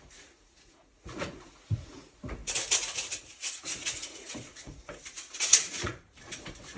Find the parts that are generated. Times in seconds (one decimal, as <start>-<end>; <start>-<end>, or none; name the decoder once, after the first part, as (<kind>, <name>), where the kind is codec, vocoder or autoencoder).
0.0-6.8 (vocoder, Vocos)